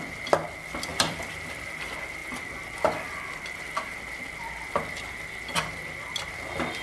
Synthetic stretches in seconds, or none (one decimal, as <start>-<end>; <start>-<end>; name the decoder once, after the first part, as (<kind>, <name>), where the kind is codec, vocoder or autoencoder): 0.9-1.8 (vocoder, BigVGAN v2)